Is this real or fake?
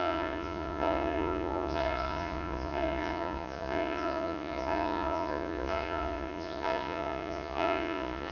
fake